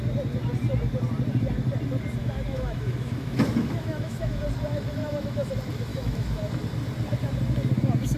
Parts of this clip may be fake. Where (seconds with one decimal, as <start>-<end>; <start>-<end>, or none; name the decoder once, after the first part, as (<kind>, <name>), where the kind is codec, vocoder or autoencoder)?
2.2-4.4 (autoencoder, DAC-VAE); 5.0-5.5; 5.9-6.5